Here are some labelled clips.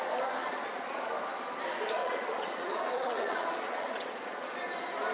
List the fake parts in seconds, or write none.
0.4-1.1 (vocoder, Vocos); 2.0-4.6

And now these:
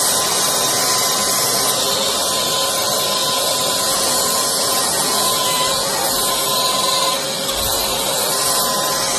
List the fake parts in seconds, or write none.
3.2-6.0 (vocoder, Vocos)

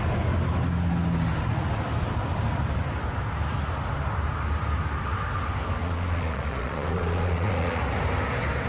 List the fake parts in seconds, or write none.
5.8-7.8 (vocoder, Vocos)

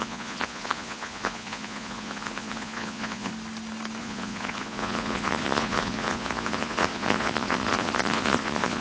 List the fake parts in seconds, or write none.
0.0-3.3 (vocoder, Vocos); 4.0-8.8

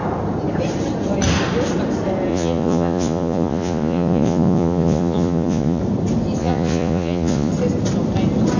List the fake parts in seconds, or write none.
2.3-5.8 (vocoder, Vocos); 6.4-7.5

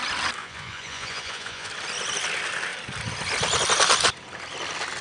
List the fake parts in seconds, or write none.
0.4-1.7 (vocoder, Vocos)